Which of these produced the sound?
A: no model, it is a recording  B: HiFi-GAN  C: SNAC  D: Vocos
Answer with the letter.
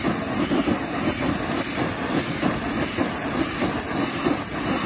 A